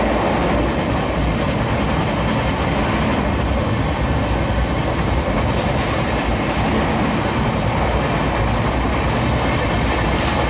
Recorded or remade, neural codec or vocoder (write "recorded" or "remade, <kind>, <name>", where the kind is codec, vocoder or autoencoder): recorded